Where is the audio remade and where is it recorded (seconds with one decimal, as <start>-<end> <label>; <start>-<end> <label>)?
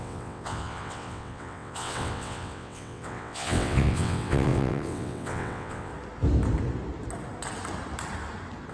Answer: 0.0-5.9 remade; 5.9-8.7 recorded